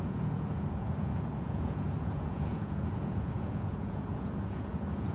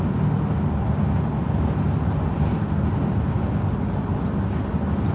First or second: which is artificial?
first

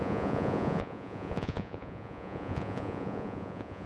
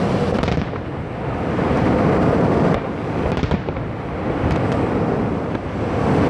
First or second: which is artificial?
first